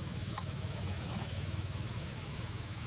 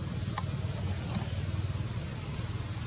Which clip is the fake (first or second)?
first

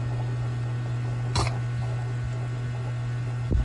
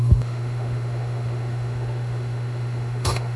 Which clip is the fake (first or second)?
second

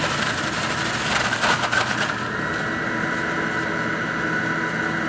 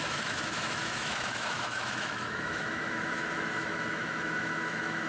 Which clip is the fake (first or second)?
second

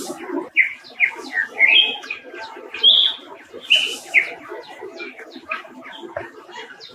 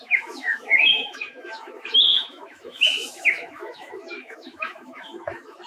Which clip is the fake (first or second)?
second